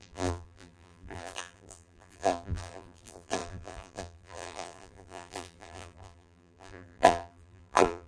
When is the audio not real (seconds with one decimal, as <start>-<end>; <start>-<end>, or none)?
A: 0.0-8.1